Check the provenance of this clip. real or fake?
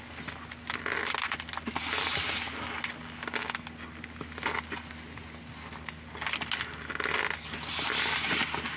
real